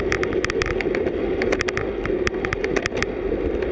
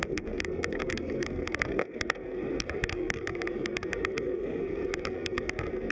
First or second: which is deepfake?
second